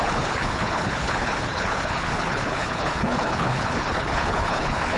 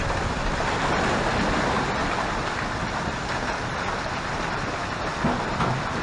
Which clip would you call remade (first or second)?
first